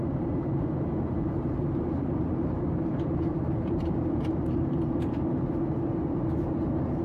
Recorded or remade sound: remade